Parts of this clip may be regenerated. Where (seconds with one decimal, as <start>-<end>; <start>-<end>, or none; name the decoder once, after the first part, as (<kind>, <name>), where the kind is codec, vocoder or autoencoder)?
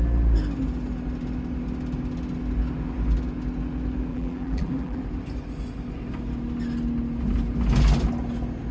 4.1-5.0 (vocoder, BigVGAN v2)